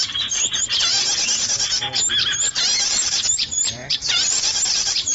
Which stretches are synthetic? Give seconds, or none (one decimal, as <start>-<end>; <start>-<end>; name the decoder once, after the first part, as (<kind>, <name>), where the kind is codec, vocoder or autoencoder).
0.0-0.9 (vocoder, BigVGAN v2); 2.9-5.1